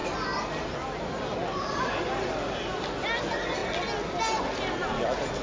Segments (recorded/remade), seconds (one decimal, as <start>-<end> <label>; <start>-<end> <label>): 0.0-5.4 recorded